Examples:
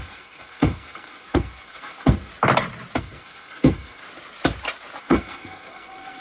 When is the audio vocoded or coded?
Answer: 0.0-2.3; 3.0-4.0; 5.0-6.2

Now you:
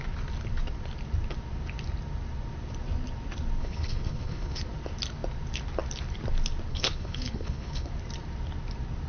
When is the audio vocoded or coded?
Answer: 3.6-4.6; 6.7-7.9

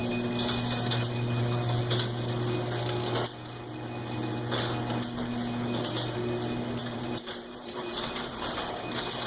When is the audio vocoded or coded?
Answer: 6.8-8.5

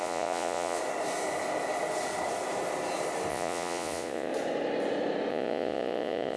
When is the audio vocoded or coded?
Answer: 0.0-0.8; 3.3-4.3; 5.3-6.4

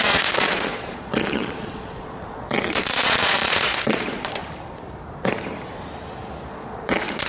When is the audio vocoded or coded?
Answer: 0.0-4.4; 6.5-7.3

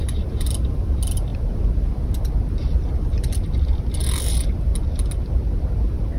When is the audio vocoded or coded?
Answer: 0.0-1.3; 4.2-4.7

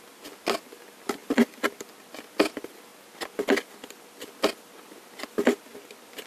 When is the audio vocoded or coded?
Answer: 1.2-2.0

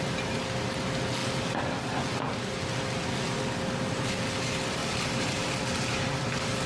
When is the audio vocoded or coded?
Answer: 4.8-5.5